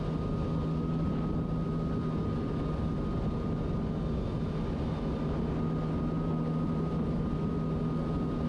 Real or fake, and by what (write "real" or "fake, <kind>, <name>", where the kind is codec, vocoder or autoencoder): real